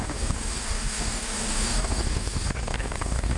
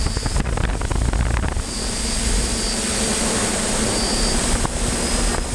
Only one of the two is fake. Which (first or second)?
first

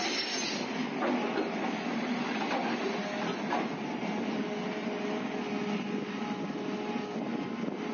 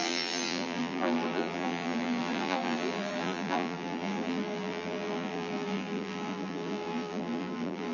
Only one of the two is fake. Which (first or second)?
second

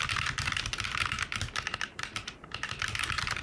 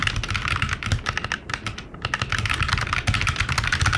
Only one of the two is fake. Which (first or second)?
first